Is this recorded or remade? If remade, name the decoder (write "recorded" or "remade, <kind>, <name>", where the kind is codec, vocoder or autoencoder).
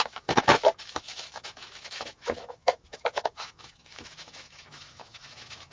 remade, autoencoder, DAC-VAE